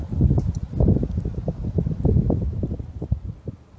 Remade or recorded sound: recorded